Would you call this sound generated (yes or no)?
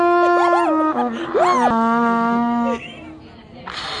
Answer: no